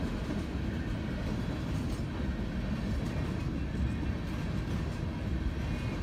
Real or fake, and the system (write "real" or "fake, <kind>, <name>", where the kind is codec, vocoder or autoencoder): real